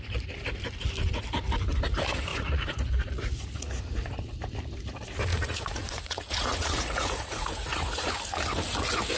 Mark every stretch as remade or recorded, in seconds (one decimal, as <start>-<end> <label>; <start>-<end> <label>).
0.0-2.3 recorded; 2.3-3.8 remade; 3.8-5.3 recorded; 5.3-8.1 remade; 8.1-9.2 recorded